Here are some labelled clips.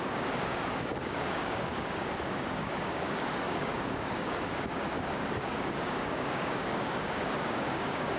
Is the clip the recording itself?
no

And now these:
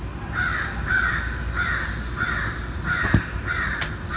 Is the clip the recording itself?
yes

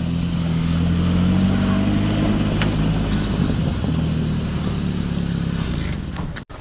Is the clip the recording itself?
yes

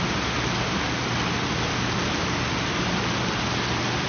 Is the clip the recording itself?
yes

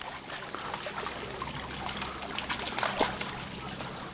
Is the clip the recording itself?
yes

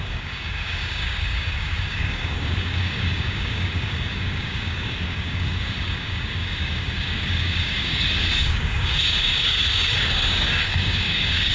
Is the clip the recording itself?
no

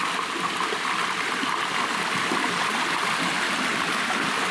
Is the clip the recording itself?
yes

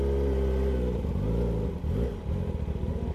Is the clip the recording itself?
yes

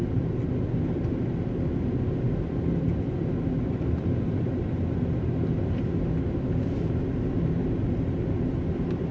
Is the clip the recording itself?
yes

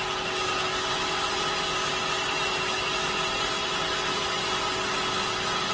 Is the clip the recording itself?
yes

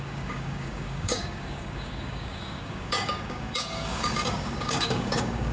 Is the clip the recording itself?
no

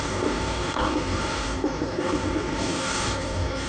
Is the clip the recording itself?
no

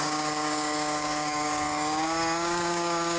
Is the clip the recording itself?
no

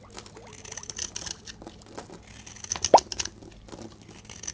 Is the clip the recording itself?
yes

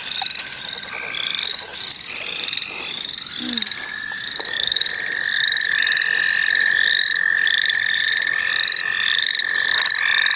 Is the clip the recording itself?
yes